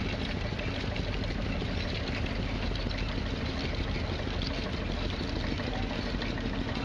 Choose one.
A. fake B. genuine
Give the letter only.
B